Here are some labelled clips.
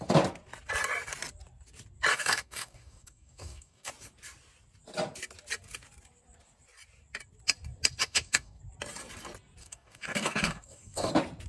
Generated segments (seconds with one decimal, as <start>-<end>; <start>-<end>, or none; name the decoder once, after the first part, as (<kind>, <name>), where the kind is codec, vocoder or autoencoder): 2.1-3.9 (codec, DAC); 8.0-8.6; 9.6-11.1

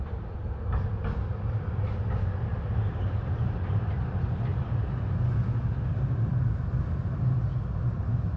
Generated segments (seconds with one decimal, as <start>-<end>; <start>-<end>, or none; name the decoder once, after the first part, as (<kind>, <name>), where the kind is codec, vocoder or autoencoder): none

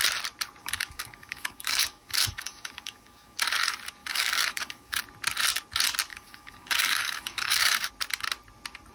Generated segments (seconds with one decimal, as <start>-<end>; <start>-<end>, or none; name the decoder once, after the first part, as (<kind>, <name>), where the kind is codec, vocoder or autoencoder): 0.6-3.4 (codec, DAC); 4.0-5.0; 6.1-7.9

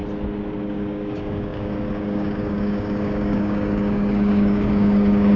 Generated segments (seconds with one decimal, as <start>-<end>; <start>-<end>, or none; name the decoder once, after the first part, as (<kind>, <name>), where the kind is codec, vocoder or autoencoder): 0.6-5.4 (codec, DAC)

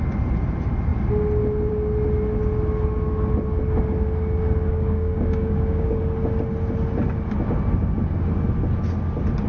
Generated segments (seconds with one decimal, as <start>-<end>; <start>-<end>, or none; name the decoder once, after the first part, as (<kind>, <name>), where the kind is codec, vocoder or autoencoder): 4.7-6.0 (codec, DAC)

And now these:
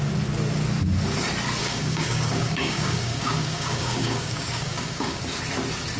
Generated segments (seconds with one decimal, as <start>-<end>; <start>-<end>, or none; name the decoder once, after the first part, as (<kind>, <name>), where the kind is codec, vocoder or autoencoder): 1.6-5.2 (codec, DAC)

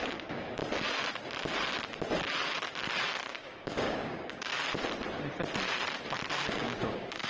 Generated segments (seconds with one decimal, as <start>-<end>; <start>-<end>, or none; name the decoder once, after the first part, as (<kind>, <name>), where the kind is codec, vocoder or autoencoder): 0.0-0.6 (codec, DAC); 3.3-4.5; 6.5-7.3